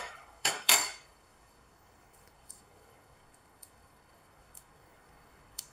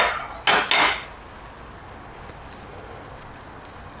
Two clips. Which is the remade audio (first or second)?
first